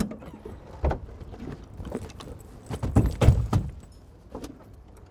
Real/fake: fake